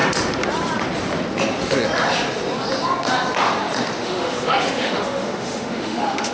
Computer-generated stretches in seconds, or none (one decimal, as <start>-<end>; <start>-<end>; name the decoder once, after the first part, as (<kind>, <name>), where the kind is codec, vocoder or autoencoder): 4.0-6.3 (autoencoder, DAC-VAE)